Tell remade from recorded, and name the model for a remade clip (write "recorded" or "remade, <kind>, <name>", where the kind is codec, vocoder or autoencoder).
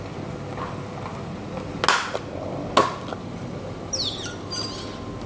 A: recorded